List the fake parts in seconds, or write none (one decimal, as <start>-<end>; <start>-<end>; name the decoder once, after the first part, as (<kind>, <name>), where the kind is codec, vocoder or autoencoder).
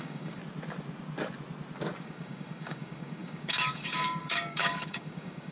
0.0-0.4 (codec, DAC); 2.0-5.5